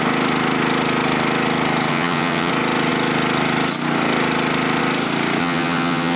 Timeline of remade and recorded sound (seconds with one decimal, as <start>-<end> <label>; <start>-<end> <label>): 0.0-1.9 recorded; 1.9-2.5 remade; 2.5-5.4 recorded; 5.4-6.2 remade